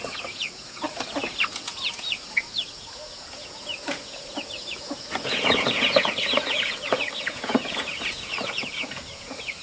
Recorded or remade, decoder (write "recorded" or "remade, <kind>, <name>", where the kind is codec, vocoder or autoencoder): remade, vocoder, Vocos